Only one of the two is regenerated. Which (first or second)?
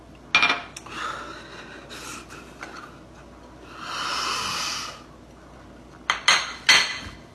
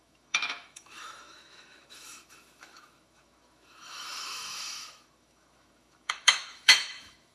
second